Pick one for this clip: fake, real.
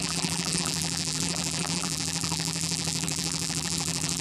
fake